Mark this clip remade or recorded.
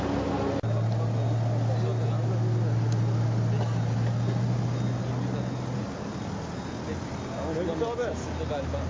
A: recorded